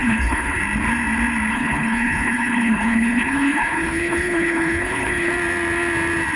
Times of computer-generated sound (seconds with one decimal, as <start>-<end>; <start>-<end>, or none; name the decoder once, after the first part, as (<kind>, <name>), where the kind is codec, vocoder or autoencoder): 0.0-0.6 (codec, HILCodec); 1.5-5.3

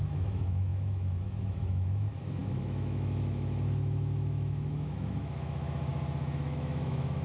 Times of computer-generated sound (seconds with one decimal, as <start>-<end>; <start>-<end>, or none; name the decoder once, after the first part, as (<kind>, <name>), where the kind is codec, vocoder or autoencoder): 0.0-5.9 (autoencoder, DAC-VAE); 6.4-7.2

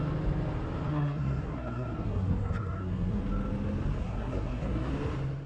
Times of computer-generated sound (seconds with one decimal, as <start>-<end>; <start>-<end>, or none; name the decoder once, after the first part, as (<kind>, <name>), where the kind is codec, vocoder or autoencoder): 0.9-3.2 (codec, SNAC); 4.0-4.9